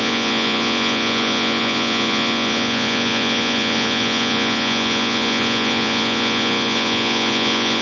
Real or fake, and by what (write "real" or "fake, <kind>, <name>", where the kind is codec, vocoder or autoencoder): fake, vocoder, Vocos